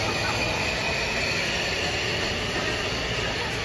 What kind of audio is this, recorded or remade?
recorded